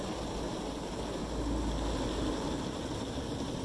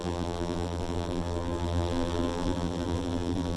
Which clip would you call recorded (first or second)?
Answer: first